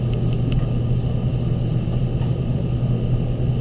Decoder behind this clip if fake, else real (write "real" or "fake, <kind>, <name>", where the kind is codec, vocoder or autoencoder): real